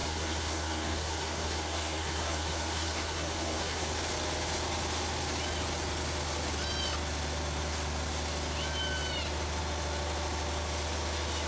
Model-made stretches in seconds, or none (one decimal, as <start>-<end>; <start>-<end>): 0.0-3.9